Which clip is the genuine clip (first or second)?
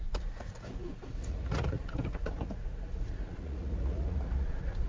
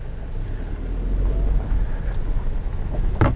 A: second